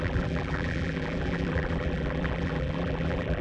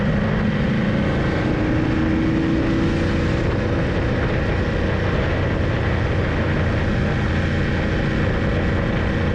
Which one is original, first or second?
second